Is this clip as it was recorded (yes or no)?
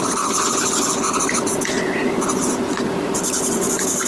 yes